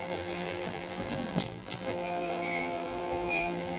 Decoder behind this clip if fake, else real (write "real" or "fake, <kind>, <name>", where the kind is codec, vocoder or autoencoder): fake, vocoder, BigVGAN v2